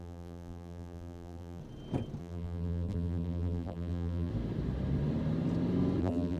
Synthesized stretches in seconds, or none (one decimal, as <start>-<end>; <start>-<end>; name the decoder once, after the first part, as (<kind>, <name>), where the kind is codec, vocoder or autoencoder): 0.0-1.6 (vocoder, BigVGAN v2); 2.2-4.3; 6.0-6.4